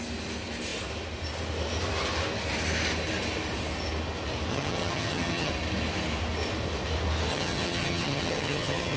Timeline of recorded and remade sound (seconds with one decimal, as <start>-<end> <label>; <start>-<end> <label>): 0.0-4.5 recorded; 4.5-5.5 remade; 5.5-7.3 recorded; 7.3-9.0 remade